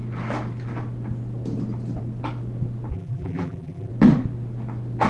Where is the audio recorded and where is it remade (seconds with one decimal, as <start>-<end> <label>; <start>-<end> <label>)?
0.0-2.9 recorded; 2.9-3.9 remade; 3.9-5.1 recorded